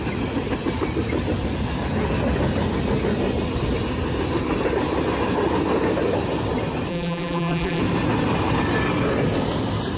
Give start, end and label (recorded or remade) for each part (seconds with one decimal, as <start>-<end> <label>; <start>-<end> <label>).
0.0-6.9 recorded; 6.9-7.8 remade; 7.8-10.0 recorded